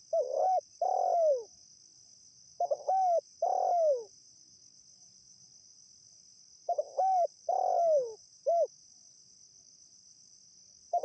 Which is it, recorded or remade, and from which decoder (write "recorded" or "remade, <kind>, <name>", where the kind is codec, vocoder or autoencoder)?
recorded